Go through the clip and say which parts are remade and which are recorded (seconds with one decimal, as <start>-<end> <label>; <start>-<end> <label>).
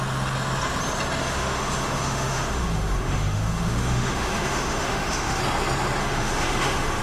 0.0-1.2 recorded; 1.2-5.4 remade; 5.4-6.0 recorded; 6.0-7.0 remade